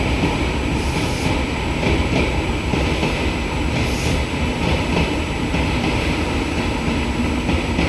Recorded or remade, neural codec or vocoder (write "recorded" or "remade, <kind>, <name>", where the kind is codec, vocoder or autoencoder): recorded